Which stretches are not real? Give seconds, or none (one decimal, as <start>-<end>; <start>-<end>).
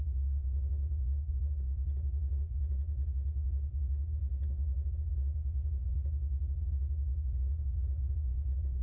none